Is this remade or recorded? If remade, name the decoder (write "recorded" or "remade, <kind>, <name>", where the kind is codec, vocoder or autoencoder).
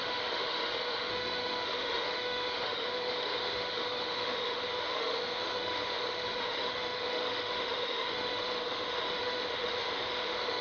remade, autoencoder, DAC-VAE